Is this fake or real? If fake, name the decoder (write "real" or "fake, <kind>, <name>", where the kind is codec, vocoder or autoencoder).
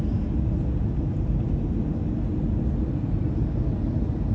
real